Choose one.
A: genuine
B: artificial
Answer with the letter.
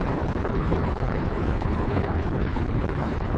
B